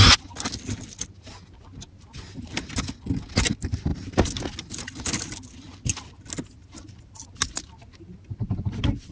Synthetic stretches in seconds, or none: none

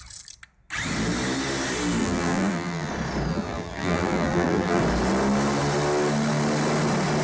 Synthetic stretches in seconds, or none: 2.0-2.9 (vocoder, BigVGAN v2); 3.3-4.8

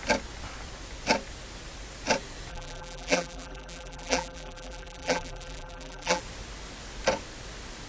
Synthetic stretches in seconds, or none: 2.5-6.2 (vocoder, BigVGAN v2)

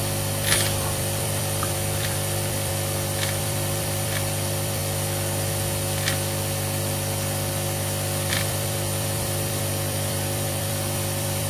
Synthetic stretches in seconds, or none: 0.0-2.7 (vocoder, BigVGAN v2); 3.4-4.8; 8.3-11.5